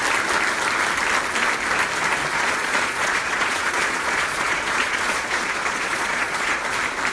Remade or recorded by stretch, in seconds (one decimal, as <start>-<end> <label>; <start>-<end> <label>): 0.0-2.3 recorded; 2.3-6.6 remade; 6.6-7.1 recorded